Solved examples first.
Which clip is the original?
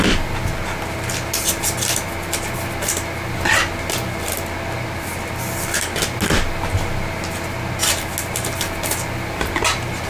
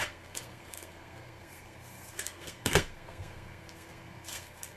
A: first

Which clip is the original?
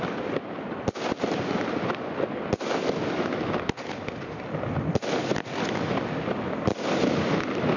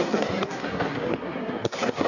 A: first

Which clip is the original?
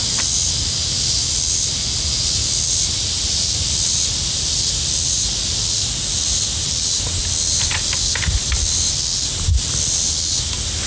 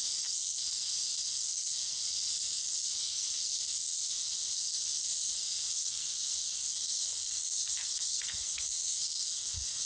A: first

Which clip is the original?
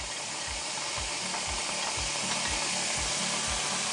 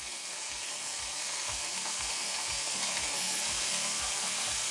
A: first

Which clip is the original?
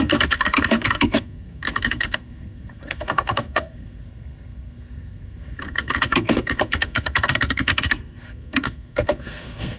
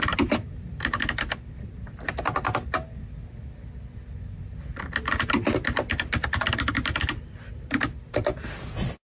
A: second